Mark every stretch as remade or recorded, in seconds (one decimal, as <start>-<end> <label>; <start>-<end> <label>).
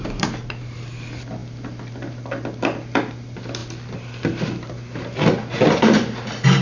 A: 0.0-6.6 remade